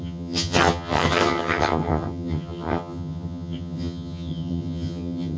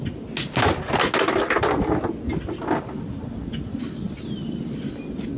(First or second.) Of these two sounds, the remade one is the first